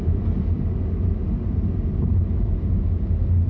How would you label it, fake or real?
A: real